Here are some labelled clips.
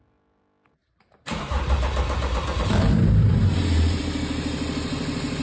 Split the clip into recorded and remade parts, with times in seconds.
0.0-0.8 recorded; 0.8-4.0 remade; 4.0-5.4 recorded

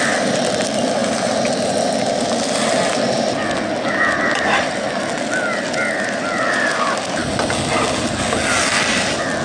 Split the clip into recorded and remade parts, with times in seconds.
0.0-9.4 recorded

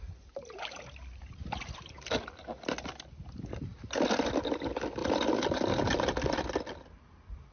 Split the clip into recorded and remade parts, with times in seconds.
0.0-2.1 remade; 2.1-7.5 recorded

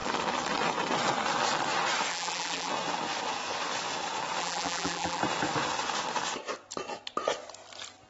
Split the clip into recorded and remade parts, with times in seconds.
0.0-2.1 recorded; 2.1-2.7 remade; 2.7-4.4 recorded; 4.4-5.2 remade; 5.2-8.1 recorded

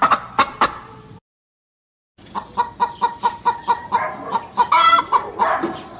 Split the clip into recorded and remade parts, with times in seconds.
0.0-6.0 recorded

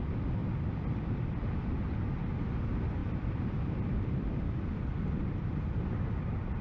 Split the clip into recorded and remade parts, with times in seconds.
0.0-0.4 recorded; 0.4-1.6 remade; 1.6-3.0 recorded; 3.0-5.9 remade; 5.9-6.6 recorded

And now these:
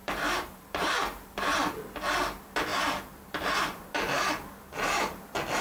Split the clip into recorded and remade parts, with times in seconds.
0.0-1.4 remade; 1.4-5.6 recorded

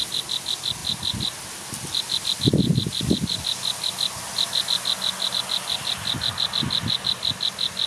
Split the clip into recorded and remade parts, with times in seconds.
0.0-7.9 recorded